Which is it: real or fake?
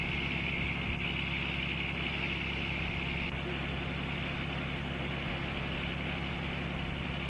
real